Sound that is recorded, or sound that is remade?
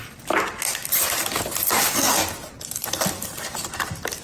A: recorded